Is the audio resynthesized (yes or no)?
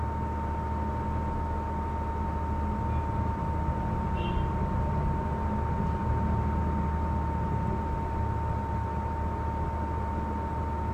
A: no